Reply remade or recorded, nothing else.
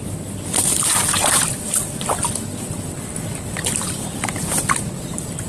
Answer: recorded